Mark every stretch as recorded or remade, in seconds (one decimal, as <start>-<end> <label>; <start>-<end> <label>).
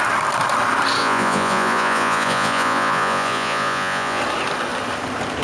0.0-1.0 recorded; 1.0-4.2 remade; 4.2-5.4 recorded